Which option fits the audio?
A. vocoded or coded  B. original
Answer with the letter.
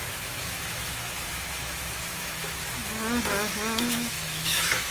A